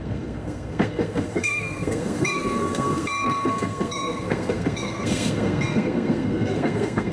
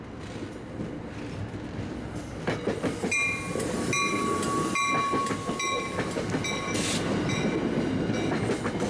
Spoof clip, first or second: first